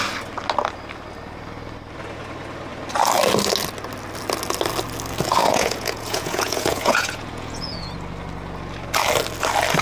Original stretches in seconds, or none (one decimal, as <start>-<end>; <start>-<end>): 0.0-5.4; 7.9-9.8